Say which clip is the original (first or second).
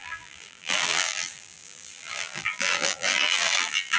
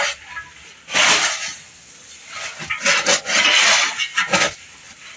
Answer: second